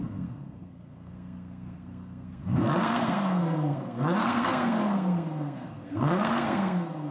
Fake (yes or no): yes